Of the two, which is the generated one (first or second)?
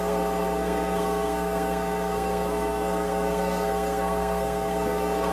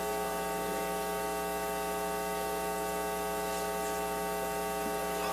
first